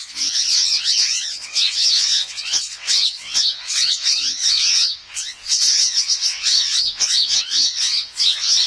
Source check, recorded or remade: remade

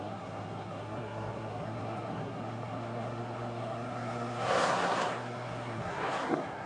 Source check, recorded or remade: remade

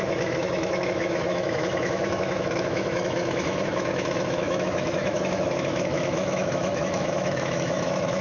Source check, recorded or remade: remade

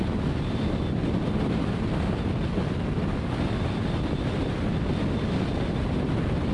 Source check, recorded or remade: recorded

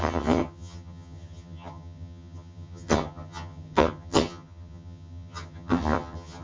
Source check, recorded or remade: remade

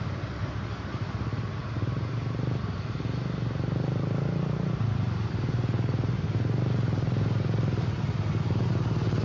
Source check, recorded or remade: recorded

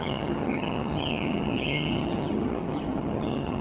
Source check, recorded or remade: remade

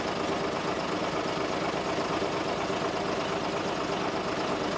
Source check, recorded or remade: recorded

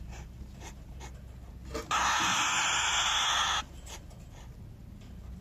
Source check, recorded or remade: recorded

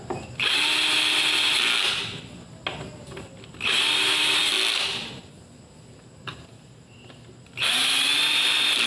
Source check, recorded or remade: recorded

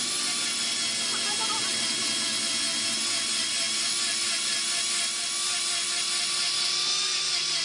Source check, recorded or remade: recorded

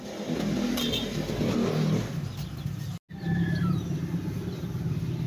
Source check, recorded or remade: recorded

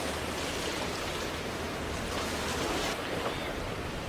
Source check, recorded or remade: remade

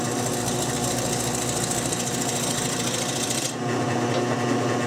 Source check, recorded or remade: recorded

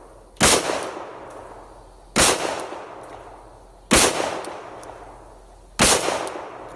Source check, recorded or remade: recorded